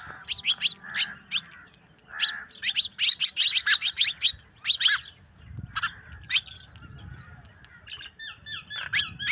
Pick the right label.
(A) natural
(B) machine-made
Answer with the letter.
A